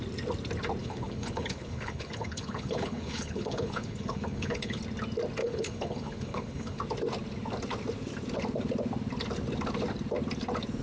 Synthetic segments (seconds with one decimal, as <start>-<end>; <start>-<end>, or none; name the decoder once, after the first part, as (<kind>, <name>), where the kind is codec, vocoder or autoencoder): 0.8-4.8 (codec, HILCodec); 5.4-6.8